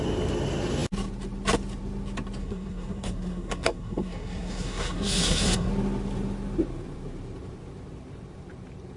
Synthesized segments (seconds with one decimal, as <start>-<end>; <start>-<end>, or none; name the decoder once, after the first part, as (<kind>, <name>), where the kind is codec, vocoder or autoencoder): 2.4-5.7 (codec, SNAC)